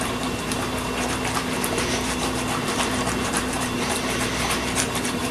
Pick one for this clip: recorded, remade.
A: remade